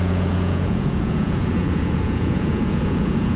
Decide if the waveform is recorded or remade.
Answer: remade